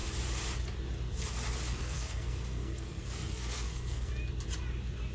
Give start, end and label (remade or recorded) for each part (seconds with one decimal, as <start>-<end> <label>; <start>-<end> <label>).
0.0-1.7 recorded; 1.7-4.1 remade; 4.1-5.1 recorded